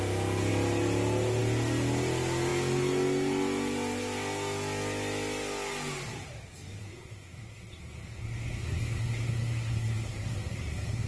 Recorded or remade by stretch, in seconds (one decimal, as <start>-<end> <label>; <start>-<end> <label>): 0.0-6.8 recorded; 6.8-11.1 remade